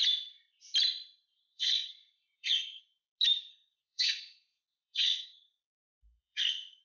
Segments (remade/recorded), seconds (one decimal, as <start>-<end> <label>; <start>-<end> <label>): 0.0-1.4 recorded; 1.4-2.8 remade; 2.8-3.5 recorded; 3.5-6.8 remade